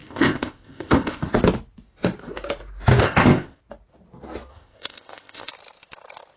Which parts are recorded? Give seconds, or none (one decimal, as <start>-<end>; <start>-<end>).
1.3-3.0; 3.6-4.5; 5.5-6.4